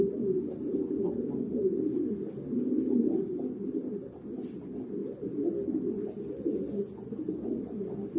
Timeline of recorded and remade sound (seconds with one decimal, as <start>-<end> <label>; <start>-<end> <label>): 0.0-8.2 recorded